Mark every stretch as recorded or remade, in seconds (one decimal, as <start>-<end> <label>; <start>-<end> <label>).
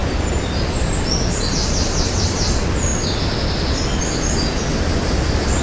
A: 0.0-5.6 recorded